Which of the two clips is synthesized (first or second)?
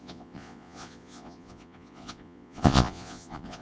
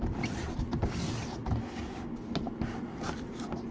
first